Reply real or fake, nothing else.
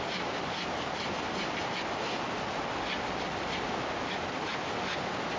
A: real